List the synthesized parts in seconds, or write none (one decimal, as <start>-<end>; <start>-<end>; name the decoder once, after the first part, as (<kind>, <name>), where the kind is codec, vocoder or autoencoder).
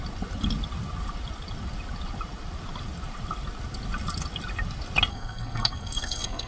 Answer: 5.1-6.5 (codec, SNAC)